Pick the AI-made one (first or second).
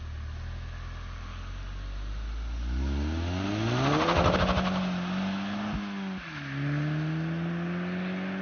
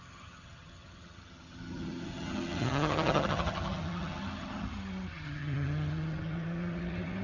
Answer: second